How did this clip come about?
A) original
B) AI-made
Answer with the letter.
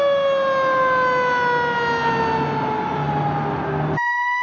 A